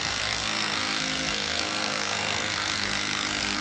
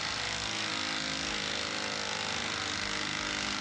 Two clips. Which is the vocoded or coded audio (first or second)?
first